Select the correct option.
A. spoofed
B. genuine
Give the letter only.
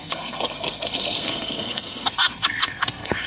A